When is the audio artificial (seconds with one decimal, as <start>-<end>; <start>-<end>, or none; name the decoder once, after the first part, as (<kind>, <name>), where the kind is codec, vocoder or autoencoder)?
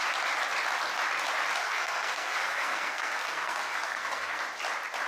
1.6-4.4 (codec, SNAC)